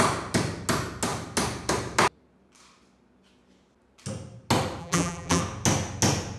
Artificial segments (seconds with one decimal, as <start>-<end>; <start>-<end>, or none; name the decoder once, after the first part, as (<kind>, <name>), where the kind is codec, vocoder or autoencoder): 4.8-5.4 (vocoder, BigVGAN v2)